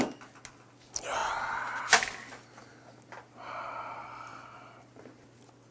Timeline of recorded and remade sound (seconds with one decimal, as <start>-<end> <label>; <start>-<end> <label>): 0.0-5.7 recorded

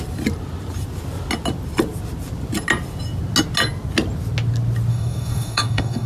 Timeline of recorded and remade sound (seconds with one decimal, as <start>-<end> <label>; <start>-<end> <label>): 0.0-4.9 recorded; 4.9-6.1 remade

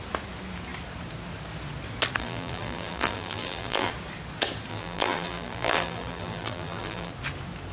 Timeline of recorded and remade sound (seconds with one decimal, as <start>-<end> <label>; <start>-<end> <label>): 0.0-2.2 recorded; 2.2-3.9 remade; 3.9-4.7 recorded; 4.7-7.1 remade; 7.1-7.7 recorded

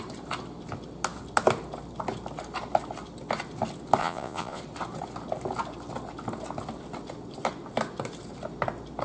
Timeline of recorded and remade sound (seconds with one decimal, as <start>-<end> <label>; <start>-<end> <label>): 0.0-4.0 recorded; 4.0-4.6 remade; 4.6-9.0 recorded

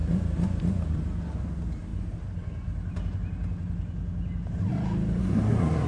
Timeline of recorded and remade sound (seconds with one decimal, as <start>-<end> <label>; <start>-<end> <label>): 0.0-5.2 recorded; 5.2-5.9 remade

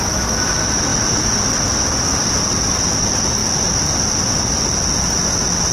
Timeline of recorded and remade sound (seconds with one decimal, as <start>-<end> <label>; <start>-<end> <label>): 0.0-0.9 recorded; 0.9-2.7 remade; 2.7-5.7 recorded